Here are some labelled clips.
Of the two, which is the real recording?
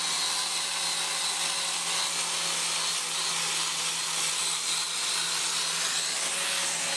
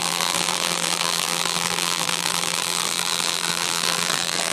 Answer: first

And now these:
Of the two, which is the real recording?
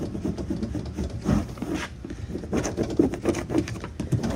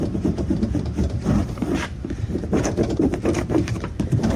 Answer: first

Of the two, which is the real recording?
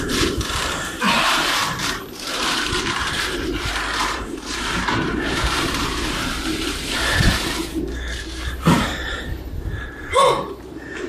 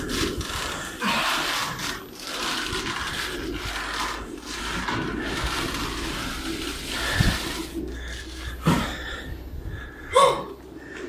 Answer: second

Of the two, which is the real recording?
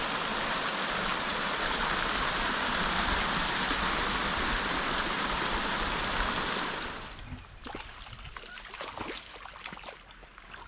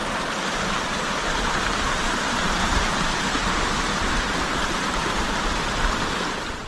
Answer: first